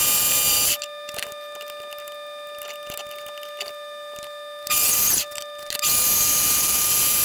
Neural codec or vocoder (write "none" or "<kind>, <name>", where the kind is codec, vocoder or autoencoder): none